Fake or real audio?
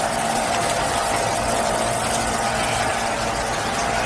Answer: real